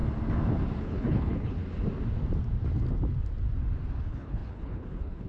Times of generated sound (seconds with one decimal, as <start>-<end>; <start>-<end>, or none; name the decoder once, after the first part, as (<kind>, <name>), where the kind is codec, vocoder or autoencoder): 0.8-1.6 (codec, HILCodec); 4.0-5.3